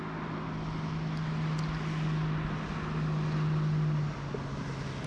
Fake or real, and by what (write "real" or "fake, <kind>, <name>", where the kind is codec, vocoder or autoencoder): real